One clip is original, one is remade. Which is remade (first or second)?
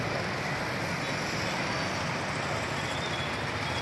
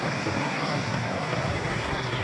second